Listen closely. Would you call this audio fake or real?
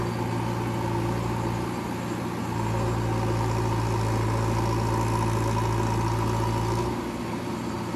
real